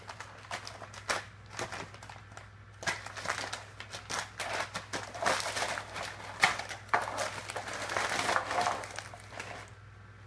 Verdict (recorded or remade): recorded